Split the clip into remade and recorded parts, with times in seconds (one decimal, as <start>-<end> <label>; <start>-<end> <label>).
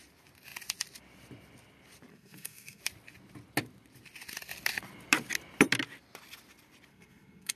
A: 0.0-2.1 recorded; 2.1-2.8 remade; 2.8-6.9 recorded; 6.9-7.6 remade